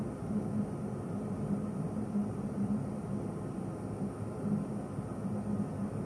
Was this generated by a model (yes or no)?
no